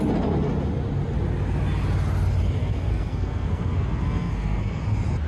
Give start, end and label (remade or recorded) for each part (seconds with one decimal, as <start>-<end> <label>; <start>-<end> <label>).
0.0-2.6 recorded; 2.6-4.8 remade; 4.8-5.3 recorded